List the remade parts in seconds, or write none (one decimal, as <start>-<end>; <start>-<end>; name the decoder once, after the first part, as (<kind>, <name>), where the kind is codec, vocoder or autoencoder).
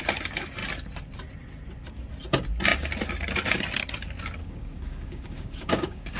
4.4-6.2 (codec, DAC)